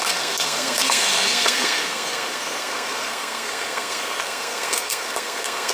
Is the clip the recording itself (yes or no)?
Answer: no